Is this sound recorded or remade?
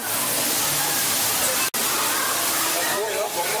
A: recorded